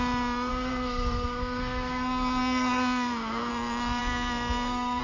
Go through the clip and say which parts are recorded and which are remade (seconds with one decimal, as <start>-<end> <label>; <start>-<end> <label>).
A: 0.0-0.5 recorded; 0.5-3.5 remade; 3.5-4.0 recorded; 4.0-5.0 remade